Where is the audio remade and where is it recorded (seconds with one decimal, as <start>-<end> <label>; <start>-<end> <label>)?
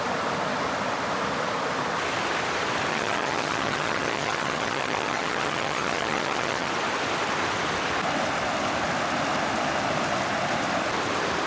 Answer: 0.0-2.9 recorded; 2.9-6.7 remade; 6.7-11.5 recorded